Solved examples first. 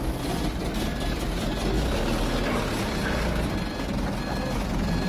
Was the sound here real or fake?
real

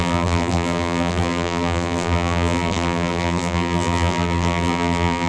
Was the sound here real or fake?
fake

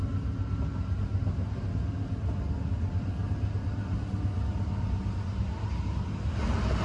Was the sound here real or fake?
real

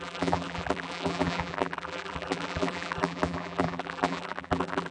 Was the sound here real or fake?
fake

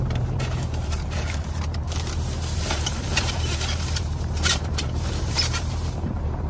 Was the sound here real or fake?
fake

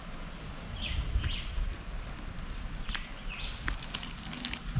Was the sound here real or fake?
real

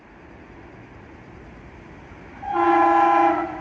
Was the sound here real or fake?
real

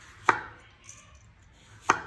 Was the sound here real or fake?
real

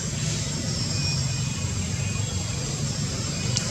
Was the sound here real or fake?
fake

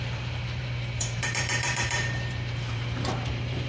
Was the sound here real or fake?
fake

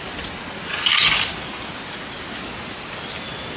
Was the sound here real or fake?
real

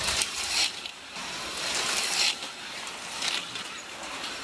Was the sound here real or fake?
fake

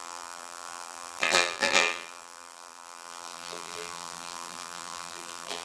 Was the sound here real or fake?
fake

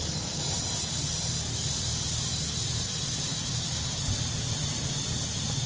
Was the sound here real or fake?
fake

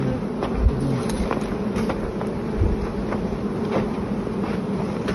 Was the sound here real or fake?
real